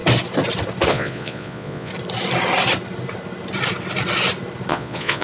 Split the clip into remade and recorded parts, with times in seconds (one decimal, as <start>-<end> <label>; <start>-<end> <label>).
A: 0.0-0.9 recorded; 0.9-1.9 remade; 1.9-4.7 recorded; 4.7-5.2 remade